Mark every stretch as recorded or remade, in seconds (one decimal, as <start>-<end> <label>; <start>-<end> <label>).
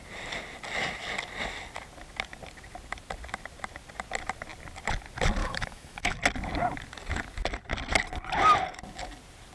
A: 0.0-5.4 recorded; 5.4-6.2 remade; 6.2-9.5 recorded